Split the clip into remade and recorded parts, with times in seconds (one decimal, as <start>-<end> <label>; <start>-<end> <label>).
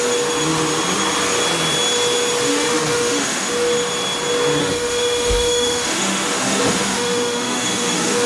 0.0-2.5 recorded; 2.5-3.5 remade; 3.5-4.6 recorded; 4.6-8.3 remade